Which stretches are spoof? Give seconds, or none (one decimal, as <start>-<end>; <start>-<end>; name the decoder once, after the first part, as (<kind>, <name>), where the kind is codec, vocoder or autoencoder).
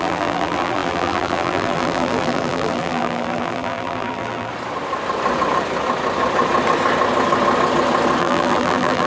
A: 0.0-4.5 (vocoder, BigVGAN v2); 8.2-9.1